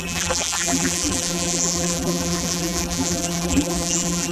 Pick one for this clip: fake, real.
fake